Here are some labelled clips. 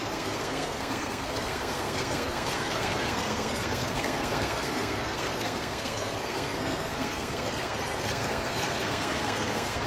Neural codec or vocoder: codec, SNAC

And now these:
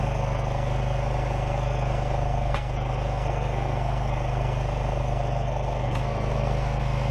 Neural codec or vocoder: codec, SNAC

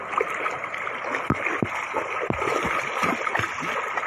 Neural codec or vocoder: none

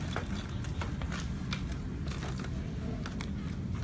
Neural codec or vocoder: none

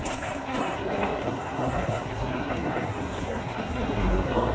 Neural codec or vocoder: codec, SNAC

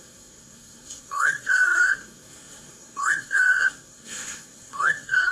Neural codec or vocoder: codec, SNAC